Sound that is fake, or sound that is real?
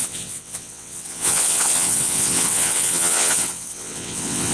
fake